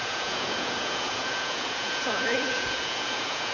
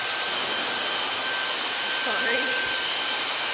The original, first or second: second